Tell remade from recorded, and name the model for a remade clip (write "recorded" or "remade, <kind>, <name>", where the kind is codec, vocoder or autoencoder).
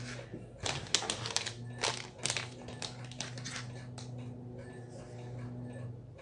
recorded